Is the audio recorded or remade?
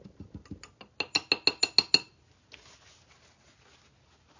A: recorded